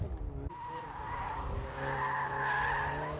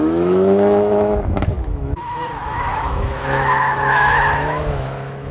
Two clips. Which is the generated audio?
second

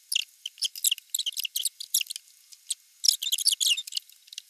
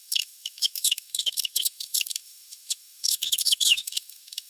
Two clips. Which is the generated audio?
second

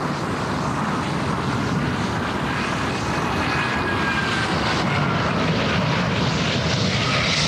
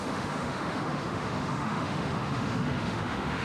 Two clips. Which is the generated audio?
second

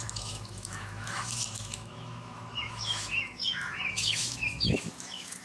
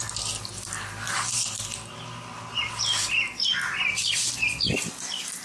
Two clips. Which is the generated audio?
first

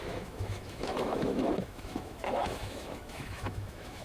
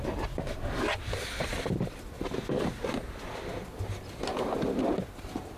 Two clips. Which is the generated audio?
first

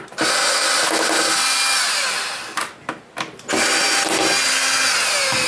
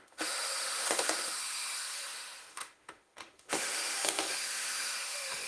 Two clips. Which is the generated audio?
second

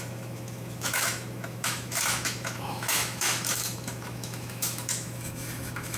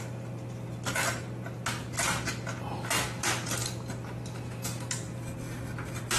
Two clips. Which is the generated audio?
first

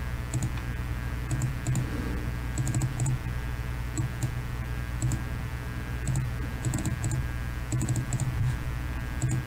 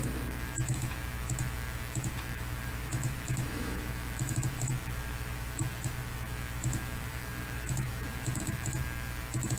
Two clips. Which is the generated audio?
second